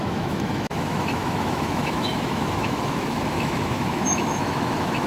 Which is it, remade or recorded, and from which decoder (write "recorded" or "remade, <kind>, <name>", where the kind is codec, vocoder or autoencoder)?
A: remade, autoencoder, DAC-VAE